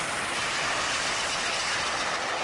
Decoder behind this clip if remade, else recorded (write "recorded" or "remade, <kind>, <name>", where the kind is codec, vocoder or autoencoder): recorded